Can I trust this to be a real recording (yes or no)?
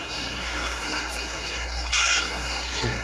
no